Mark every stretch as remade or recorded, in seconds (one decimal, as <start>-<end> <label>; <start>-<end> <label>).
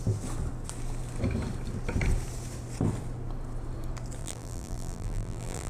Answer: 0.0-4.2 recorded; 4.2-5.7 remade